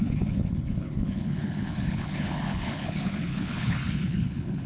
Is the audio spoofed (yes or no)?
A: yes